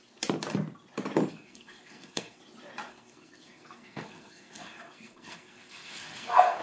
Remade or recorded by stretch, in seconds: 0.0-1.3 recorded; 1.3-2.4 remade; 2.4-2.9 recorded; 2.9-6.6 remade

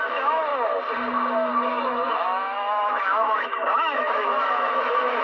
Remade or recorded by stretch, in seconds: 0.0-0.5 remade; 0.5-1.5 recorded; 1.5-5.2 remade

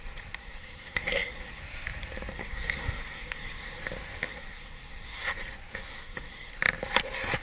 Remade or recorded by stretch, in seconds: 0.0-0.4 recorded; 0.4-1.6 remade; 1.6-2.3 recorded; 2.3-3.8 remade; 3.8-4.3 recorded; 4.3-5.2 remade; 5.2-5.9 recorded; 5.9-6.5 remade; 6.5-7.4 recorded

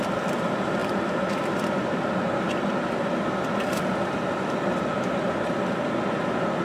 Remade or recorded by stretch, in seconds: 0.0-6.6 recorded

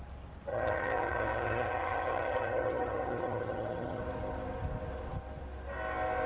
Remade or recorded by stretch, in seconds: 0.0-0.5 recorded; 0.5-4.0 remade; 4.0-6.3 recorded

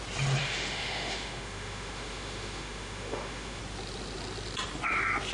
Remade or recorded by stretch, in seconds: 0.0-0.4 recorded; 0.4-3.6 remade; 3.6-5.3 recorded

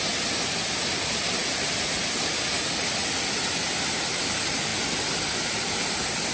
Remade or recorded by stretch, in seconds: 0.0-6.3 recorded

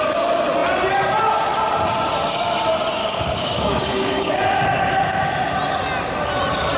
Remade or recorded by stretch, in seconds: 0.0-3.0 recorded; 3.0-4.3 remade; 4.3-6.8 recorded